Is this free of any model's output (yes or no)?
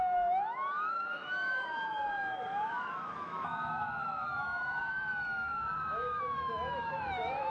no